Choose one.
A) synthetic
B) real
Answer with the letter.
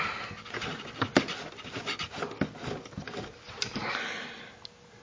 B